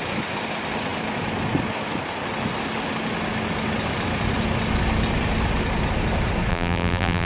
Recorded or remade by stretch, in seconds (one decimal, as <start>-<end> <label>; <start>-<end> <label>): 0.0-6.5 recorded; 6.5-7.3 remade